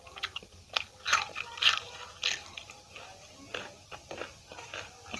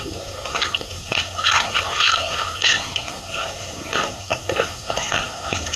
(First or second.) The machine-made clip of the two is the second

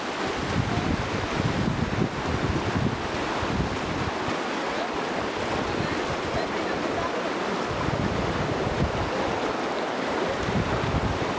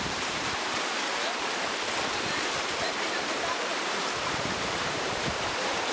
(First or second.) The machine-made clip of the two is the second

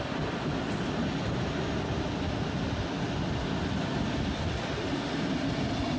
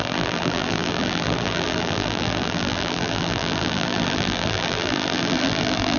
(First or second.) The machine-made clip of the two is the second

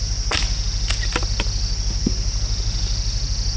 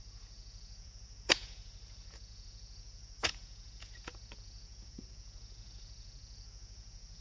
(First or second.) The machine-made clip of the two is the second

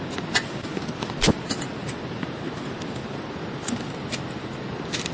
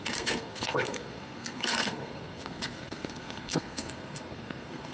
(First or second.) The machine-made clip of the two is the second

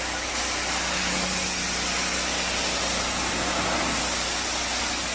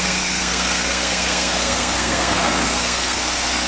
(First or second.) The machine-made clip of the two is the second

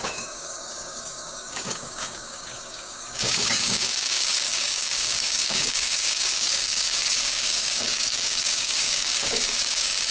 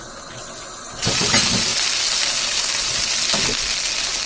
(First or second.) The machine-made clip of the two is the first